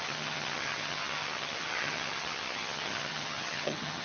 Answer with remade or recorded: remade